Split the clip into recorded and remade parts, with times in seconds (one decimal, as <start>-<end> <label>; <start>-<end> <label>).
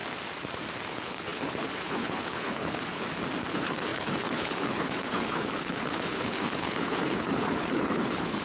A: 0.0-0.9 recorded; 0.9-3.0 remade; 3.0-3.5 recorded; 3.5-8.4 remade